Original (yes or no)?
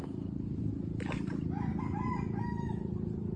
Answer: yes